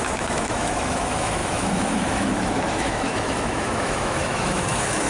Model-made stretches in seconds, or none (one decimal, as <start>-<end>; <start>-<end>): 0.0-5.1

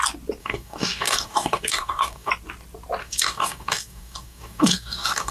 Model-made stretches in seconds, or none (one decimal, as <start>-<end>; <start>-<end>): 0.4-2.3; 3.0-5.3

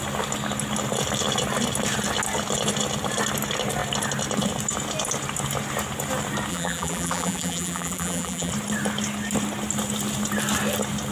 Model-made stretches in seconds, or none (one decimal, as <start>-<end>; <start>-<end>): 6.5-8.5

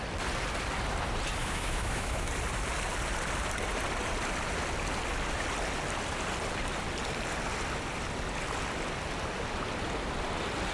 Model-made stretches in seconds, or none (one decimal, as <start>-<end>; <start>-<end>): 1.4-2.3

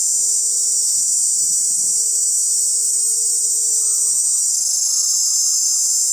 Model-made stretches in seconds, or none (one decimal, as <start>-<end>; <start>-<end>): none

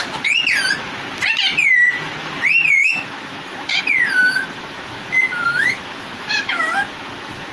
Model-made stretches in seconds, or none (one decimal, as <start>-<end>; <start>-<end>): 2.8-3.8; 4.2-7.5

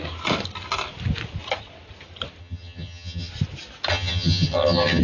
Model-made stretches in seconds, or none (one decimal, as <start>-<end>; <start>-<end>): 2.4-3.3; 3.9-5.0

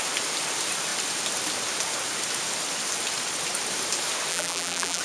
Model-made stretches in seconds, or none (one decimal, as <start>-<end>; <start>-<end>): 4.3-5.0